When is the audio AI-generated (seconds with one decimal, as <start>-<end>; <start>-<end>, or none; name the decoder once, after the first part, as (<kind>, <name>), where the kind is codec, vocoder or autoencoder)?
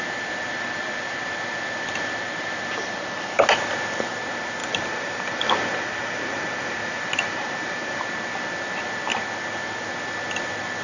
4.6-8.0 (vocoder, BigVGAN v2)